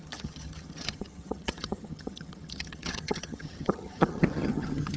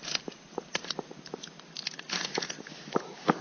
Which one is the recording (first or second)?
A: second